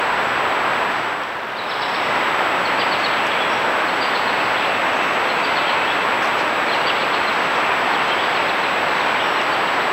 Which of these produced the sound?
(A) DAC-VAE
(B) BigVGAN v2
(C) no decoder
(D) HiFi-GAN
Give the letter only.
C